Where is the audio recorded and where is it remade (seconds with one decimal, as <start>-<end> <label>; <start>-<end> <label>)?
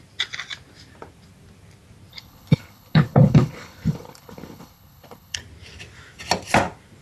0.0-2.1 recorded; 2.1-5.4 remade; 5.4-7.0 recorded